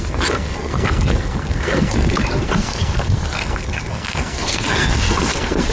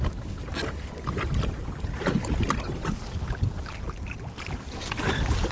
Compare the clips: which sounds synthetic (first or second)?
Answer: first